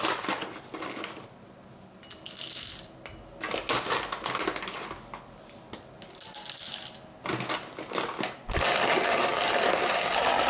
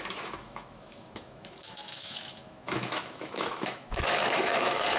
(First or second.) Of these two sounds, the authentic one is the first